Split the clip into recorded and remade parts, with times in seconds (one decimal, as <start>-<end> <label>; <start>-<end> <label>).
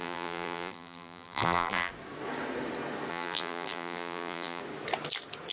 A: 0.0-1.9 remade; 1.9-3.1 recorded; 3.1-4.6 remade; 4.6-5.5 recorded